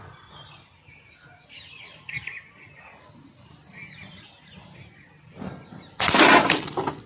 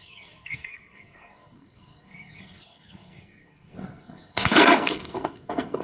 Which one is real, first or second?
first